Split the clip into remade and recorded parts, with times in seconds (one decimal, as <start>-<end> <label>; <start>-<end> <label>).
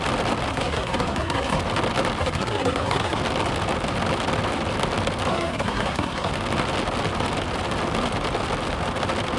0.0-0.5 recorded; 0.5-1.6 remade; 1.6-2.2 recorded; 2.2-3.2 remade; 3.2-5.3 recorded; 5.3-6.3 remade; 6.3-9.4 recorded